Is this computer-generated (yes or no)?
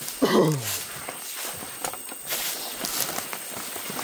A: no